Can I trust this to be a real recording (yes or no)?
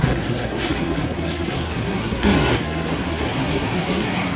no